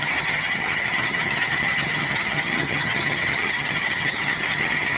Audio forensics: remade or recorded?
remade